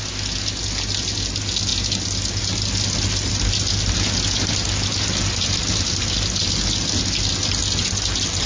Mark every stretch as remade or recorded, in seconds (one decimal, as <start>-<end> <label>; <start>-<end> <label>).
0.0-8.5 recorded